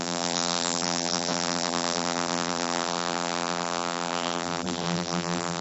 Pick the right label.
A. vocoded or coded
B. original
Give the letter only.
A